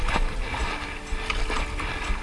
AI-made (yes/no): no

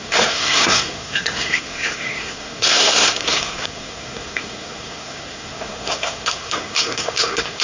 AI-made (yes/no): yes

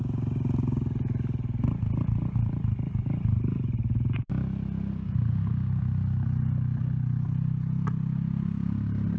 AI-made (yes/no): no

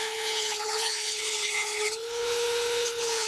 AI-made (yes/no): yes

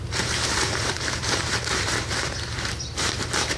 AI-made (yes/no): yes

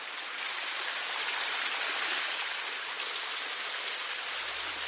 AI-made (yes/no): yes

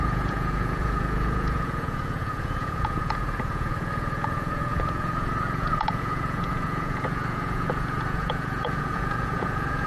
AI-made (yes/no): yes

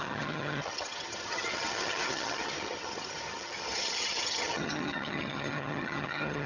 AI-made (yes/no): yes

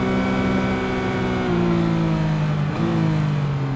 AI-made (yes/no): no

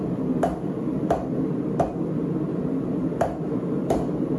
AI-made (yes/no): yes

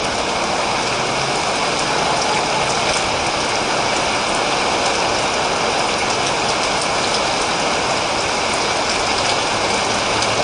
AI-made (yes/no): no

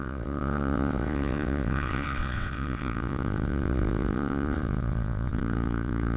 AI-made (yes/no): yes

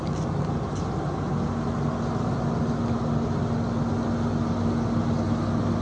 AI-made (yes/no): no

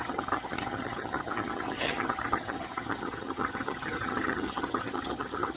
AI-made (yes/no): yes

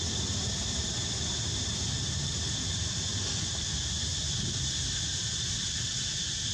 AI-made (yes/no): yes